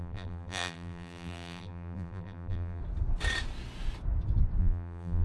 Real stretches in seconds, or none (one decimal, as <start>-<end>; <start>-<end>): 2.8-4.6